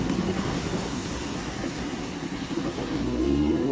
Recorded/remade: remade